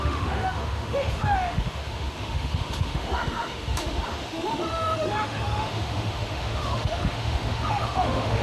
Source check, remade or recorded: remade